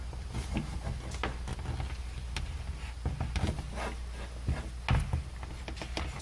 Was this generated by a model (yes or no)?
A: no